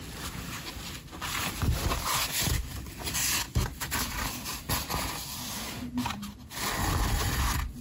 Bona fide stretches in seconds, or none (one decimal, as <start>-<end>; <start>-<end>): 0.0-7.8